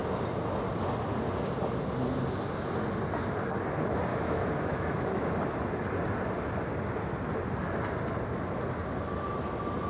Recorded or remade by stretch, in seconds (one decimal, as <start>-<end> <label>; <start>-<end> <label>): 0.0-4.1 recorded; 4.1-5.2 remade; 5.2-9.9 recorded